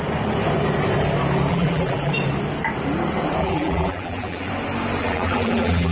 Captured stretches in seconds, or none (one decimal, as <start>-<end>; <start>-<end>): 0.0-1.5; 2.1-3.4; 4.5-5.0